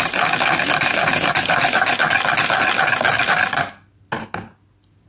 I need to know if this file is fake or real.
real